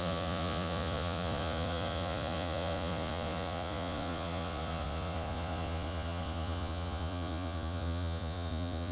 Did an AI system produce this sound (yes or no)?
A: yes